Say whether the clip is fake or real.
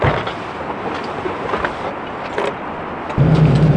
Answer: real